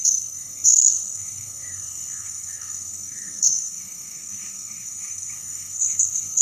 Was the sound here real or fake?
fake